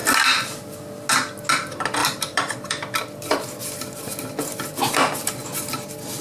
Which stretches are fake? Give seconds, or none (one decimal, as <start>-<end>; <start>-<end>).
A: 2.0-3.6